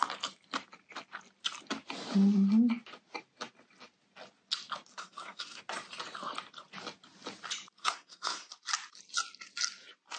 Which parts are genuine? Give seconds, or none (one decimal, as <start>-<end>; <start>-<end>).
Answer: 0.0-4.9; 5.6-7.8; 8.5-10.2